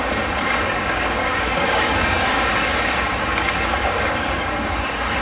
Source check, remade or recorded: remade